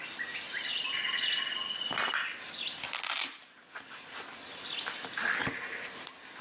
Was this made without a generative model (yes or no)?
yes